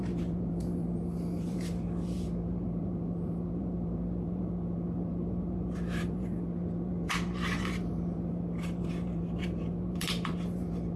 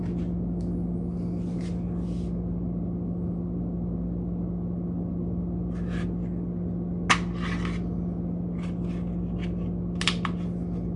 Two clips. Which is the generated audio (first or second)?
first